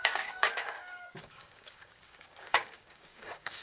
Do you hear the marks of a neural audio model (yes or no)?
yes